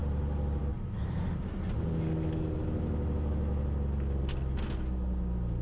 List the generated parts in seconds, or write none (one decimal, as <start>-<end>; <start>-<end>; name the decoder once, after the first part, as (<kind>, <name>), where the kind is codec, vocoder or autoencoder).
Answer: none